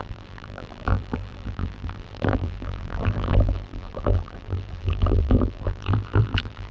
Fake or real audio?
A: fake